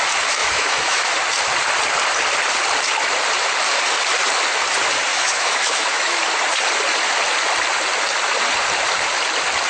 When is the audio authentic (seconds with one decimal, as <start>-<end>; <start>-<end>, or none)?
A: 0.0-0.4; 1.1-5.1; 6.2-9.7